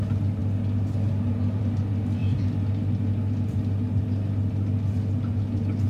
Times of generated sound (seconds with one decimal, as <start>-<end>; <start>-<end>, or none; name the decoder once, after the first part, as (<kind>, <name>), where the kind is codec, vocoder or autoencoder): none